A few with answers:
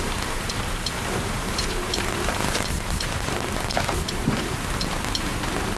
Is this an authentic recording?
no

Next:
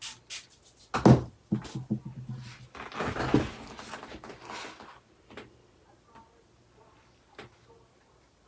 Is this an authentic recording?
yes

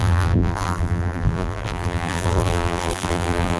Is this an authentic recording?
no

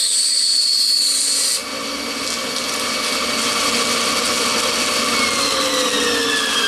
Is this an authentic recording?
yes